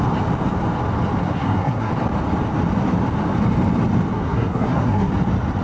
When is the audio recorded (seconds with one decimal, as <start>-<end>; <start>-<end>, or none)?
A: 0.0-1.2; 1.9-4.1; 5.1-5.6